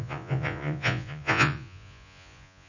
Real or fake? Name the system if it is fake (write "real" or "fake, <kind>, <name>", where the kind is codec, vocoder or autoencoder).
fake, vocoder, Vocos